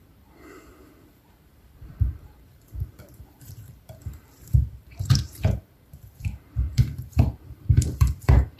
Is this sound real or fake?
fake